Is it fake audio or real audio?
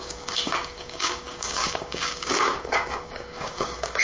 fake